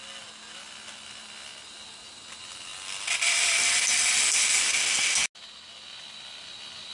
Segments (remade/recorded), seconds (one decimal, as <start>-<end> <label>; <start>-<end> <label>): 0.0-6.9 recorded